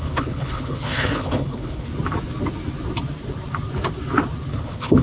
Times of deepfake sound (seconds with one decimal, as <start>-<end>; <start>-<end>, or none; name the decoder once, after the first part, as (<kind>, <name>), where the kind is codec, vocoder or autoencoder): 0.0-1.9 (codec, HILCodec); 4.5-5.0